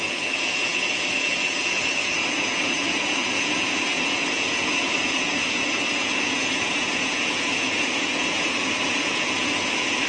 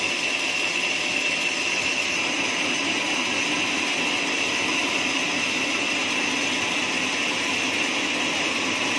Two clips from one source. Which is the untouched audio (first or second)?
second